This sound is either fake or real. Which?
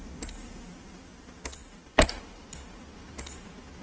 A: real